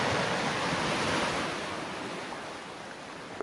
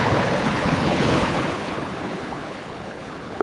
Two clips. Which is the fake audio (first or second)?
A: second